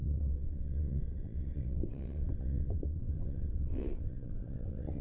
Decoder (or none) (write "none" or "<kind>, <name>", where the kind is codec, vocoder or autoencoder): vocoder, WaveNeXt